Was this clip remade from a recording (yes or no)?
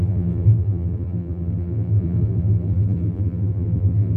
yes